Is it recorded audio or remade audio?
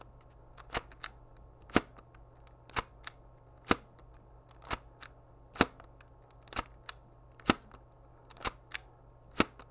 recorded